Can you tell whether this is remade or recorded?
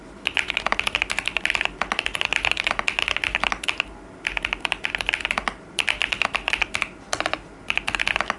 recorded